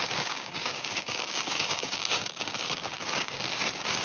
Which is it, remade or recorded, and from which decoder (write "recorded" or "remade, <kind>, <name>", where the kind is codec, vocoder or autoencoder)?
remade, codec, DAC